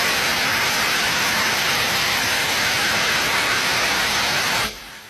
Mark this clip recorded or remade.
remade